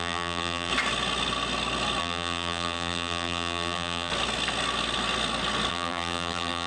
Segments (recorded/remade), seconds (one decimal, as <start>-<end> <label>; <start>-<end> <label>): 0.0-0.7 remade; 0.7-2.0 recorded; 2.0-4.1 remade; 4.1-5.7 recorded; 5.7-6.7 remade